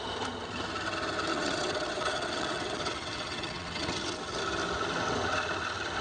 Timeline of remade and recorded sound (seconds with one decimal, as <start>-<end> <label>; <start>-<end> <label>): 0.0-1.3 recorded; 1.3-4.4 remade; 4.4-6.0 recorded